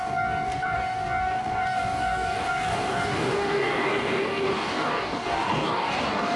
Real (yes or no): no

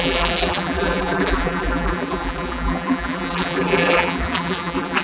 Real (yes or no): no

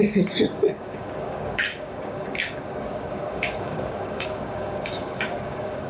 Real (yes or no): no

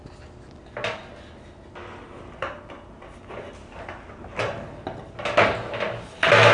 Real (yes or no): yes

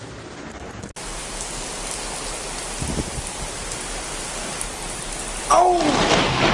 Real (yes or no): yes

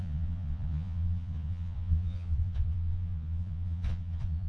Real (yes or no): no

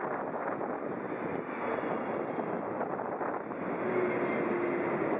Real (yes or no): yes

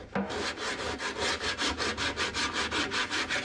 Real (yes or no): yes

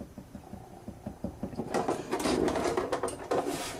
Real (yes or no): no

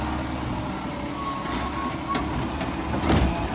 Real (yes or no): yes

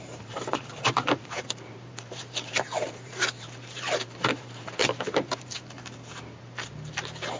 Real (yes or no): no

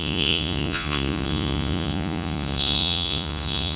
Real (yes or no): no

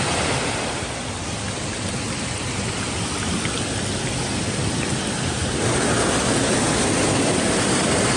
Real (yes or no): yes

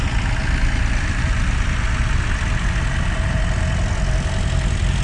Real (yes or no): yes